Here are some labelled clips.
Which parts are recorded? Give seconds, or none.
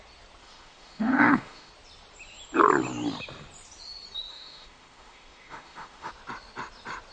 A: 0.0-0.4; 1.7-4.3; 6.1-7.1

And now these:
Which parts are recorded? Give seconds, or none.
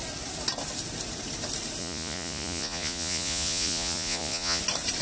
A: 0.0-1.8; 4.6-5.0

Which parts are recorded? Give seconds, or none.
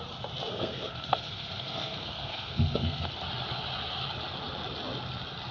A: 0.0-0.5; 3.1-5.5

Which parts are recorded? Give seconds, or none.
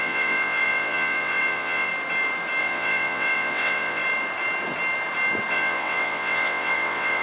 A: 1.9-2.6; 4.0-5.5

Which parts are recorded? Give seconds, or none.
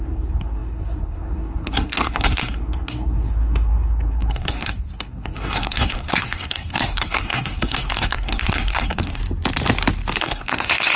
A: 9.2-10.2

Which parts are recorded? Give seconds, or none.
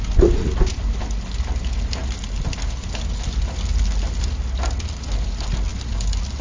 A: 0.0-6.4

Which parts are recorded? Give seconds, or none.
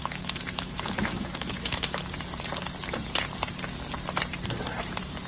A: 2.0-5.3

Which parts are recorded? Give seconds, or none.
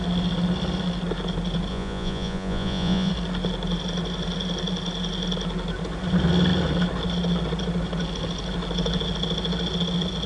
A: 0.0-1.7; 3.1-10.3